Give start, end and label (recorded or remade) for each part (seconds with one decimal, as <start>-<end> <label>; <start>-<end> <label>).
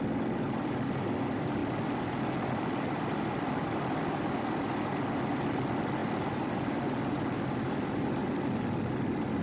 0.0-9.4 recorded